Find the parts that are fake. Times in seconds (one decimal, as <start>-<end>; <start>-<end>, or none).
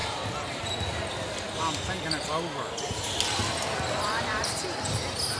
3.4-5.0